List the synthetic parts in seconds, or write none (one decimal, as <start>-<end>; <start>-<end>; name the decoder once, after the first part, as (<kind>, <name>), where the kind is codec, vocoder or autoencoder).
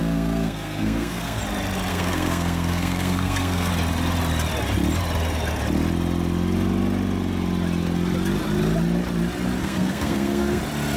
0.0-1.4 (codec, SNAC); 1.9-3.7; 9.6-10.6